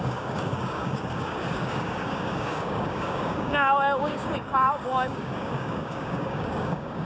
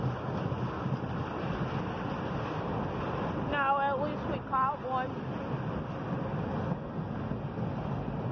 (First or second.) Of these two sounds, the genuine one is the second